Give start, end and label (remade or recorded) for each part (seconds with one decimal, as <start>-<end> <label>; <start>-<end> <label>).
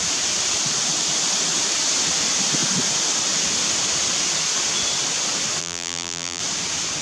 0.0-5.6 recorded; 5.6-6.4 remade; 6.4-7.0 recorded